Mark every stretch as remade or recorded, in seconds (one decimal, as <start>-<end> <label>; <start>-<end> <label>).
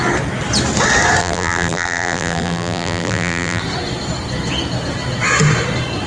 0.0-1.2 recorded; 1.2-3.6 remade; 3.6-6.1 recorded